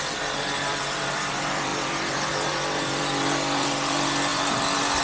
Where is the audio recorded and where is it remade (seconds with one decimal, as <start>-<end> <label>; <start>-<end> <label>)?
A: 0.0-4.3 remade; 4.3-5.0 recorded